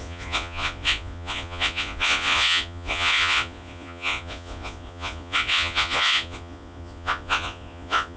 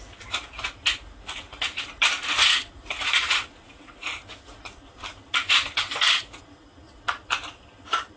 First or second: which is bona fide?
second